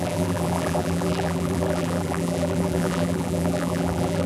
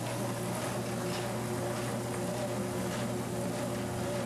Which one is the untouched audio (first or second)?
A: second